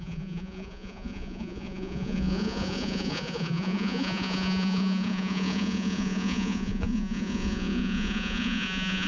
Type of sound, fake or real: fake